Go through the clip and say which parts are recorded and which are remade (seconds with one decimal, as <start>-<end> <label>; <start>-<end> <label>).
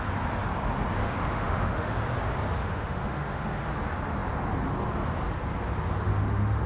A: 0.0-1.0 recorded; 1.0-1.9 remade; 1.9-2.6 recorded; 2.6-3.6 remade; 3.6-6.1 recorded; 6.1-6.7 remade